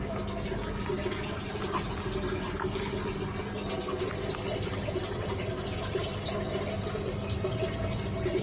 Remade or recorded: recorded